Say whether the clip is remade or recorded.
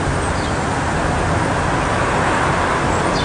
recorded